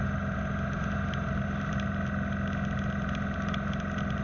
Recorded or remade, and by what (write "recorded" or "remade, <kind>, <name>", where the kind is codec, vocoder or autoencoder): recorded